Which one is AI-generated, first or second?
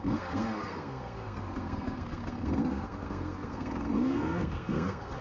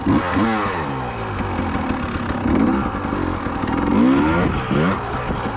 first